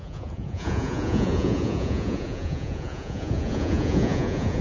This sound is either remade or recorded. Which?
remade